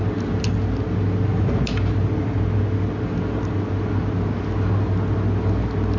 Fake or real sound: real